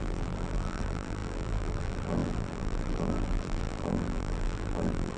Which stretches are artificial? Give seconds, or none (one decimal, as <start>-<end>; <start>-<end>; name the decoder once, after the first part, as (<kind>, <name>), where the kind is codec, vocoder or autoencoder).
0.0-5.2 (vocoder, BigVGAN v2)